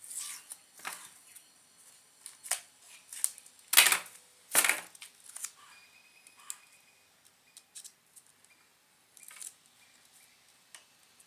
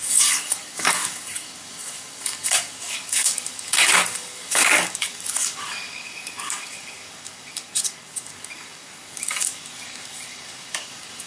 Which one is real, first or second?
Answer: first